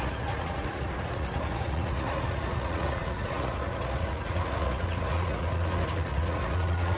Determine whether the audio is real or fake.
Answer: fake